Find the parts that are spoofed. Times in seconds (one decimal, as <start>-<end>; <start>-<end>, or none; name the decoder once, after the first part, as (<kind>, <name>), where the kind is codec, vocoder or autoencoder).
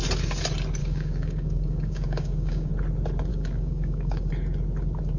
0.8-2.7 (codec, DAC); 3.3-4.3